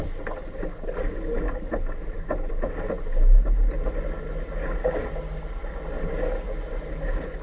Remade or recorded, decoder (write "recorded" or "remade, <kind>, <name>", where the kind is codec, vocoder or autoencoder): recorded